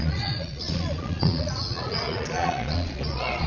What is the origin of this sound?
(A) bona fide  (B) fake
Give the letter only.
B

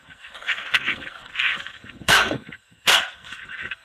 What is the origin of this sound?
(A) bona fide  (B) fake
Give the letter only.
B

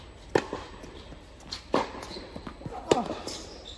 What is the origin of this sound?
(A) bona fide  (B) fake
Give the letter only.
A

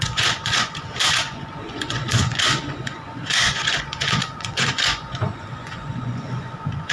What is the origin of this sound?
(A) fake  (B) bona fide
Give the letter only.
A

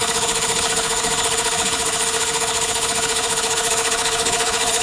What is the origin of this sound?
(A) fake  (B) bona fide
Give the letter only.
A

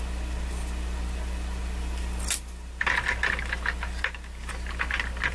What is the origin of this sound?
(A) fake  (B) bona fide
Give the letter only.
B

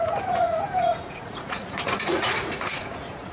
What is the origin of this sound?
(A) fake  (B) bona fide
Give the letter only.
A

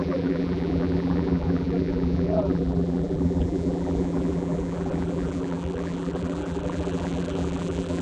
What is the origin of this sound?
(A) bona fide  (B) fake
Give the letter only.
B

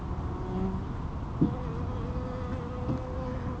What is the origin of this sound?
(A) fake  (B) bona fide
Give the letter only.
B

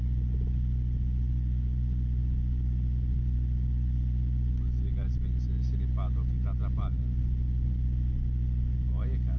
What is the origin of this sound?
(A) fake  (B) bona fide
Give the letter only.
B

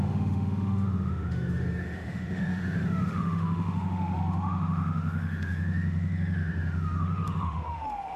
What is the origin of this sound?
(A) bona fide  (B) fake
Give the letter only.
B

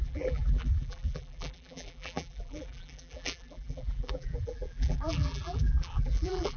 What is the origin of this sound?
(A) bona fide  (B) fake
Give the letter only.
B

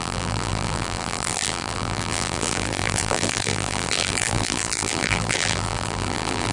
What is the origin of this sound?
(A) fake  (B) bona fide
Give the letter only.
A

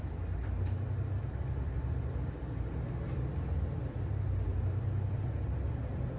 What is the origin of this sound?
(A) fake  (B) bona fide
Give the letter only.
B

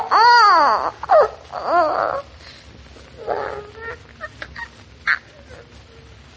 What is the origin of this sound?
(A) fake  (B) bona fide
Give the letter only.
B